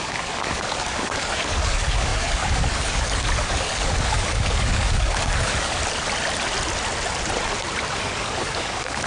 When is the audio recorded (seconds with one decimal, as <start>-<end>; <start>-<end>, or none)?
5.8-7.9